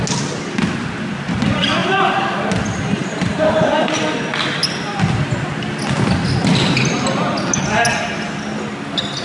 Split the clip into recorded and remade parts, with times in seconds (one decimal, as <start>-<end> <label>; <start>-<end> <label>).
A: 0.0-1.8 recorded; 1.8-2.5 remade; 2.5-3.0 recorded; 3.0-3.6 remade; 3.6-9.2 recorded